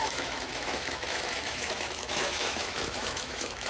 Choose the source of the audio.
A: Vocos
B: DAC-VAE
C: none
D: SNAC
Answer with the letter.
B